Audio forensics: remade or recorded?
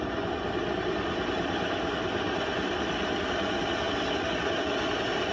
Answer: recorded